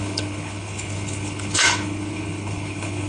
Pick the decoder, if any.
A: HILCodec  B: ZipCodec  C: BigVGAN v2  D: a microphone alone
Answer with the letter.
A